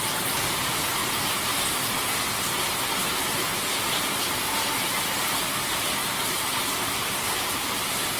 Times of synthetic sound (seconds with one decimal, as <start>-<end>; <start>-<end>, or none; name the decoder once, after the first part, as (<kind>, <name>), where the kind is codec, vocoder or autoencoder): none